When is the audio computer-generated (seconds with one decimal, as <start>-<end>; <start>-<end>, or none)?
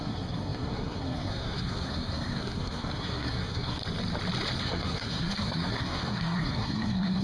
0.0-3.8; 4.6-7.2